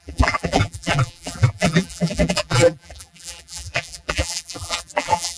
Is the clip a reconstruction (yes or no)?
yes